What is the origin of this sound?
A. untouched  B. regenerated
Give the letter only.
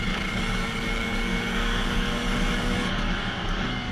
B